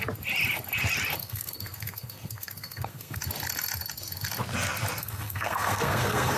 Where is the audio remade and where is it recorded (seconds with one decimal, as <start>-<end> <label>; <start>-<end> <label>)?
0.0-1.2 recorded; 1.2-3.2 remade; 3.2-5.0 recorded; 5.0-6.4 remade